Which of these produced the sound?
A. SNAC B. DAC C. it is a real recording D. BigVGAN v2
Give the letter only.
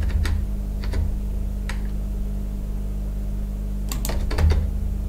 C